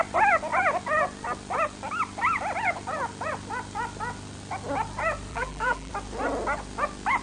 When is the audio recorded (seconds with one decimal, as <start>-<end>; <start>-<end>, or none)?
0.0-5.3; 5.9-7.2